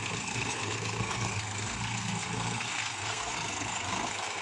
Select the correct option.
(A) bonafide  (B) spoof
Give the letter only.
B